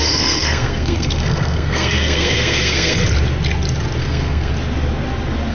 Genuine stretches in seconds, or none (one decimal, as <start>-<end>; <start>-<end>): 3.0-4.0; 4.5-5.5